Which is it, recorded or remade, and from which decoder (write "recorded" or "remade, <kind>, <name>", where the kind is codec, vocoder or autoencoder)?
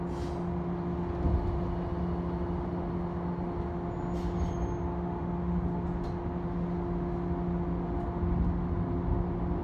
recorded